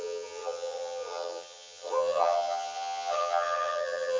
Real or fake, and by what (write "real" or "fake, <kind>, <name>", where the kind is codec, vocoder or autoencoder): fake, vocoder, HiFi-GAN